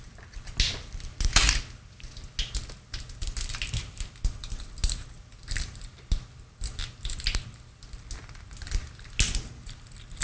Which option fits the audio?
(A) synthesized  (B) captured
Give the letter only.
B